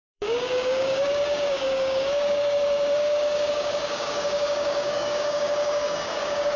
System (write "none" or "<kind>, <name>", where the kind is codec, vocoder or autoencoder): codec, DAC